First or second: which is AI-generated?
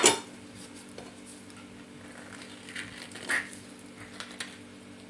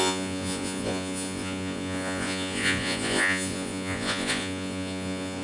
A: second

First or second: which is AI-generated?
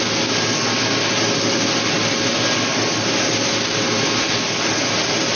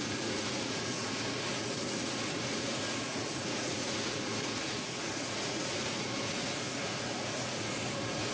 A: second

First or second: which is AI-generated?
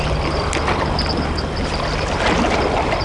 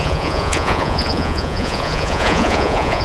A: second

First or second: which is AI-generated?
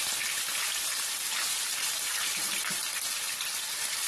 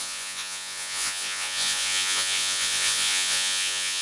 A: second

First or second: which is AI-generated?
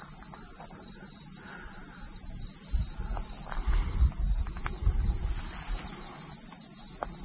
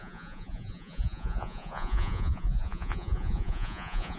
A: second